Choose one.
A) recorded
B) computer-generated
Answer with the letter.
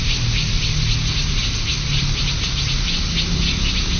A